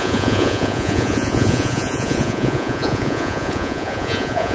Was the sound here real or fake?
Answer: fake